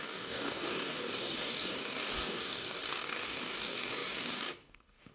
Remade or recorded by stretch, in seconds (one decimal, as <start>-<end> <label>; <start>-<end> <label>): 0.0-5.1 remade